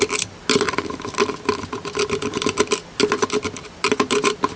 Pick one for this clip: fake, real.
real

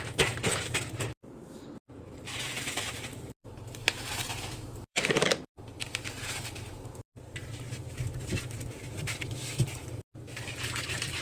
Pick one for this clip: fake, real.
fake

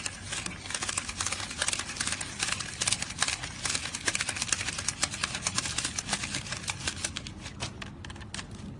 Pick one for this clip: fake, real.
real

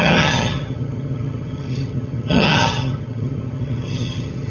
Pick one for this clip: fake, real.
fake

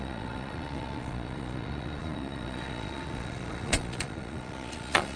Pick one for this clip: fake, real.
fake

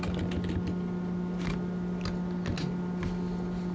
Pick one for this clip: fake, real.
real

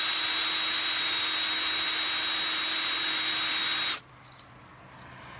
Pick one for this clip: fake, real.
real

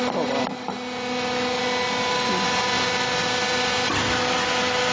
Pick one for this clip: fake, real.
real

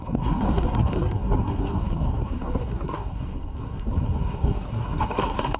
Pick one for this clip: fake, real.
fake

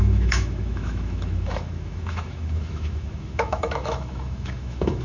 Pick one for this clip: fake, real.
fake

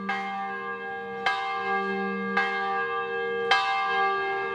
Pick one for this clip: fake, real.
real